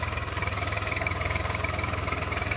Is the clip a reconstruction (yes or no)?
yes